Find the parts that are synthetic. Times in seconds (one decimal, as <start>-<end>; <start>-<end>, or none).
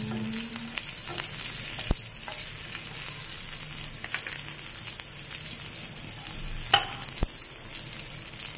none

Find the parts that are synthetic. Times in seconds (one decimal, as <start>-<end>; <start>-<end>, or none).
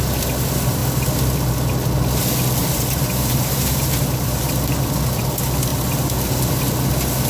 2.6-4.0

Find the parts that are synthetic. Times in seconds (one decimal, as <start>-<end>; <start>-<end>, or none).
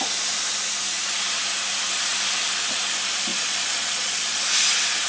3.3-4.4